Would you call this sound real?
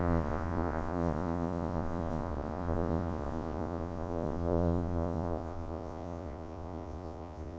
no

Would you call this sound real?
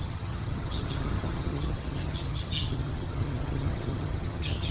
no